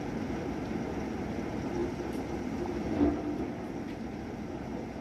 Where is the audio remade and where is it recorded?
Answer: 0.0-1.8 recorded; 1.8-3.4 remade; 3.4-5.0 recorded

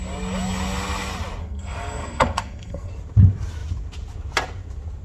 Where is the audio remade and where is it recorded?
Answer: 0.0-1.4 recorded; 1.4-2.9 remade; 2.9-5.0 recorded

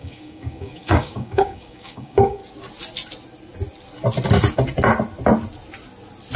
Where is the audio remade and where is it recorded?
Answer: 0.0-2.4 remade; 2.4-6.4 recorded

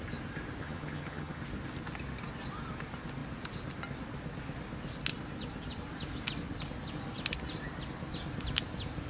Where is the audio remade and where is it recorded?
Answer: 0.0-0.6 recorded; 0.6-1.4 remade; 1.4-9.1 recorded

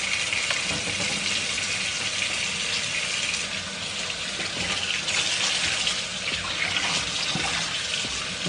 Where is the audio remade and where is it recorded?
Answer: 0.0-8.5 recorded

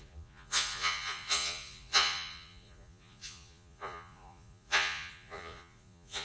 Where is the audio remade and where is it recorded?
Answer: 0.0-6.2 remade

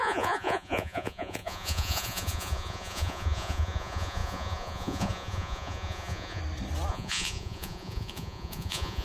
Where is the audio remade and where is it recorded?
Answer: 0.0-6.4 remade; 6.4-6.9 recorded; 6.9-9.0 remade